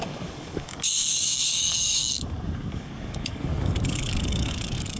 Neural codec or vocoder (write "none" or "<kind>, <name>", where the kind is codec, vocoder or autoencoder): codec, DAC